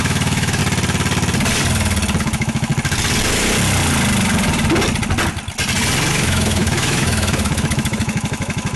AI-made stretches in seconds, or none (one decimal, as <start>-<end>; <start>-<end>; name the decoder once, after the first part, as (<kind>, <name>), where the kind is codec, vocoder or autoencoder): 0.0-0.6 (autoencoder, DAC-VAE); 2.2-2.7; 6.1-8.8